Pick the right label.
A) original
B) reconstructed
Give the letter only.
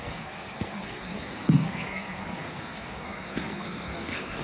B